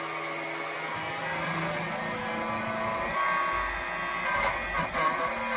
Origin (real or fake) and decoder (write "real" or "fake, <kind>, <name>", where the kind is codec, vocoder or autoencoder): real